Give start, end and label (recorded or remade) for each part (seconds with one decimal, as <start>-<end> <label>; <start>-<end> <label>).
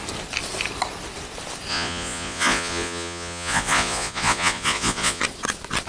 0.0-1.7 recorded; 1.7-5.2 remade; 5.2-5.9 recorded